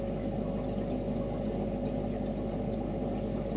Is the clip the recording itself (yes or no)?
yes